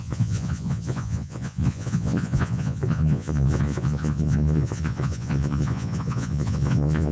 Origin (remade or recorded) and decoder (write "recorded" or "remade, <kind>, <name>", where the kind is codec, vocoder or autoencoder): remade, vocoder, Vocos